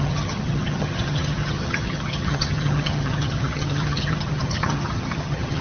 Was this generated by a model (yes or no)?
yes